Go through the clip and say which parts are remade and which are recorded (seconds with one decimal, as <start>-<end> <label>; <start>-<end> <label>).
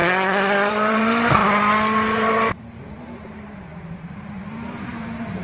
0.0-0.7 recorded; 0.7-1.4 remade; 1.4-2.8 recorded; 2.8-3.7 remade; 3.7-4.8 recorded; 4.8-5.4 remade